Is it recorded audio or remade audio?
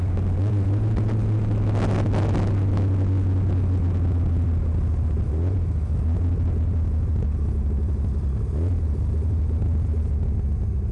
recorded